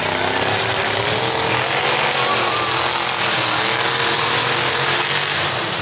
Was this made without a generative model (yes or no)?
yes